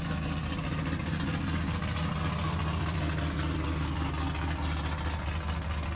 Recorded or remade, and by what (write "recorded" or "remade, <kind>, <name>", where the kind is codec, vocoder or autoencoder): recorded